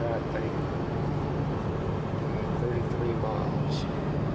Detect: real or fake real